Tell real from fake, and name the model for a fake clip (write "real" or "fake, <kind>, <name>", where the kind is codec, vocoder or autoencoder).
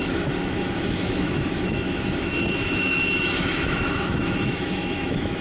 fake, autoencoder, DAC-VAE